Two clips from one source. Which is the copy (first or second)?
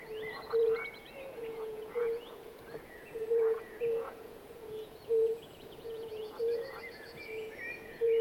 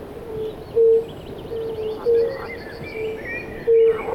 first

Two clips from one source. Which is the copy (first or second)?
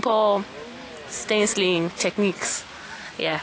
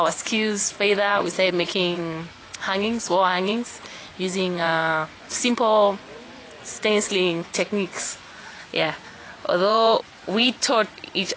second